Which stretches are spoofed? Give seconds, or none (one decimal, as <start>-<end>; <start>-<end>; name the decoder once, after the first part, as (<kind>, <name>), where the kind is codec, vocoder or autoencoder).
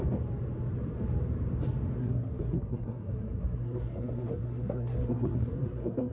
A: 2.0-6.1 (codec, SNAC)